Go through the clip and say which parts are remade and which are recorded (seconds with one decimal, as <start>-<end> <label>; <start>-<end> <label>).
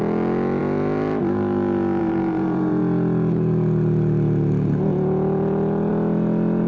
0.0-2.0 recorded; 2.0-2.8 remade; 2.8-6.7 recorded